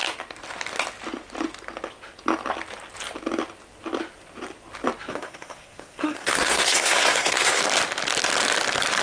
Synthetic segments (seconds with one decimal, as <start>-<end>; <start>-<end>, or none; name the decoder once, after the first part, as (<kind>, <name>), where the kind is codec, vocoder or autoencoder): 5.1-7.6 (codec, SNAC)